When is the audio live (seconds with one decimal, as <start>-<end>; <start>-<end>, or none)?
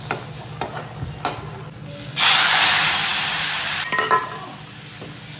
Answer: 0.0-2.1; 2.6-5.4